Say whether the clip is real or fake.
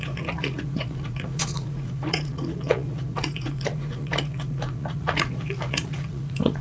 fake